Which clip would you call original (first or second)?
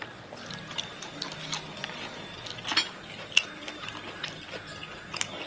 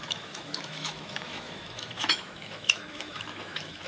first